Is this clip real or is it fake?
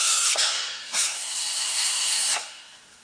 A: fake